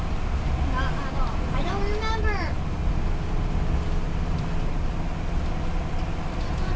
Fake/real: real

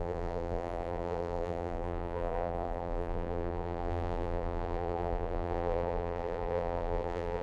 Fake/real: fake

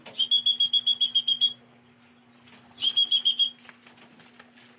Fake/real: real